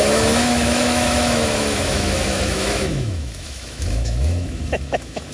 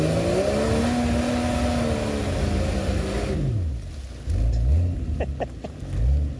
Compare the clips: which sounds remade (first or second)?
first